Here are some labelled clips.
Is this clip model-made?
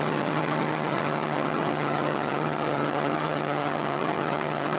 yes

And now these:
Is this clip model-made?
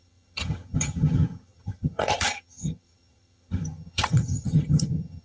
yes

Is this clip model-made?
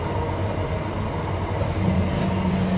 no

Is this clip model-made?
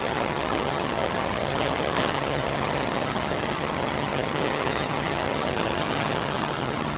yes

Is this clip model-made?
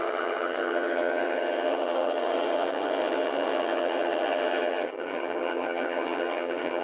yes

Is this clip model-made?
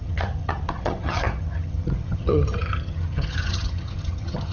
yes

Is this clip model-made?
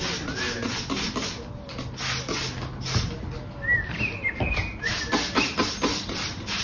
no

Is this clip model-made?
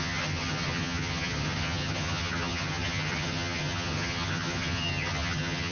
yes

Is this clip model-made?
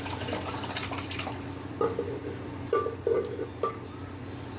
no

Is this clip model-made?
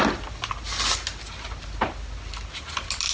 no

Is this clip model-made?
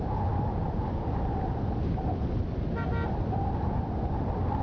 no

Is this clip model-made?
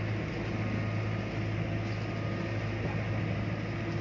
no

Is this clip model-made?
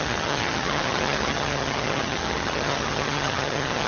yes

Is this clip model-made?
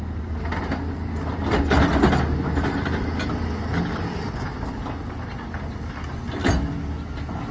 no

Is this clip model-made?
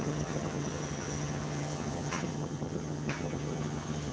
yes